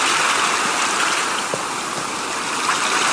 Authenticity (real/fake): real